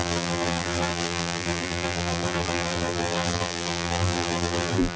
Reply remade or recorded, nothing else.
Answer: remade